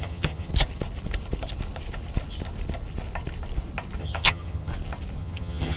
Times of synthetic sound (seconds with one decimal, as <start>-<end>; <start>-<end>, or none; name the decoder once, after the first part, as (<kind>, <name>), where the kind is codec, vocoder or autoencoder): 0.0-0.5 (vocoder, HiFi-GAN); 4.0-4.7; 5.2-5.8